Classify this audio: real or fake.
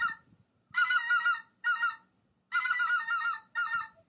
real